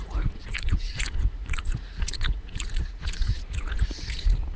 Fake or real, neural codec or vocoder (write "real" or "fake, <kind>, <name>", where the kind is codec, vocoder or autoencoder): fake, vocoder, Vocos